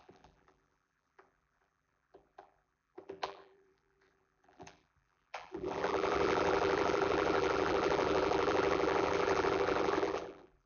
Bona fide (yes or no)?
no